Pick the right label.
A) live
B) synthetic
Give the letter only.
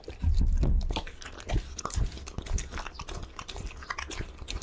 A